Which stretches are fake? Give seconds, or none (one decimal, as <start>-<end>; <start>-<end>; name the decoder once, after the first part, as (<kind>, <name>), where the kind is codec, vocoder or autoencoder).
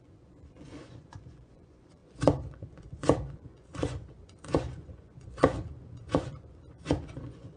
0.0-7.6 (vocoder, Vocos)